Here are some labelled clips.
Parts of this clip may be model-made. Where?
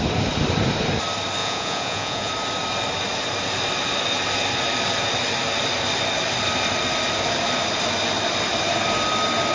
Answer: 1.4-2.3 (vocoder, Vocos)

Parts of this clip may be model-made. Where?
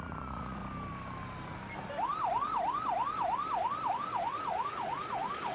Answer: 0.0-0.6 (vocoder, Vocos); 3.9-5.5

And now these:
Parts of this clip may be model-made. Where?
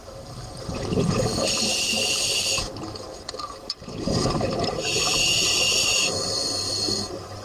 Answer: none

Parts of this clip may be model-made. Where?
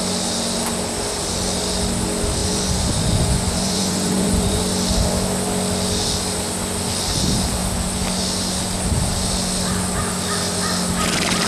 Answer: 2.4-4.6 (vocoder, Vocos)